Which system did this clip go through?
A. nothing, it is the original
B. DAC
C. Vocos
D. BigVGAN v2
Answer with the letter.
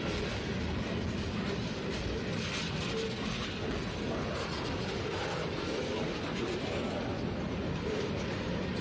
A